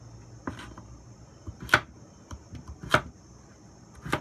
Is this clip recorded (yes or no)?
yes